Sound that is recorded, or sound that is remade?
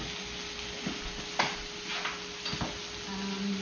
recorded